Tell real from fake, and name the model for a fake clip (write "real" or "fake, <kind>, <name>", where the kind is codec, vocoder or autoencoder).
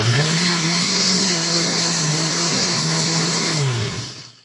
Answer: fake, codec, SNAC